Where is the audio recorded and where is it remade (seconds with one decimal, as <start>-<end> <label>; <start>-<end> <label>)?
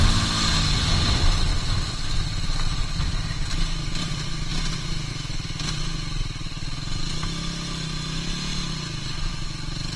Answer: 0.0-5.1 recorded; 5.1-5.7 remade; 5.7-10.0 recorded